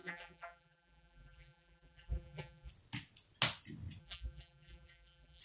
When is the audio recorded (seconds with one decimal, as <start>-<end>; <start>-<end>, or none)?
2.7-4.0